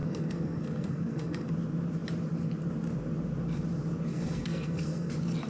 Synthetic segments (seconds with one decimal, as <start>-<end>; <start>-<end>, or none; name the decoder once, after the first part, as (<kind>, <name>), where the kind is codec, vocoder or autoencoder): 0.0-1.5 (codec, SNAC); 4.1-5.1